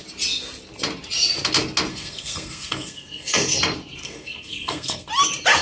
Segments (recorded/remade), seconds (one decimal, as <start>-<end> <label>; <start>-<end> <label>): 0.0-1.9 recorded; 1.9-3.6 remade; 3.6-4.0 recorded; 4.0-5.1 remade; 5.1-5.6 recorded